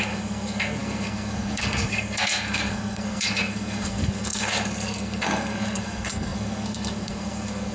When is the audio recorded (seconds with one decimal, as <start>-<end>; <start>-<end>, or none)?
none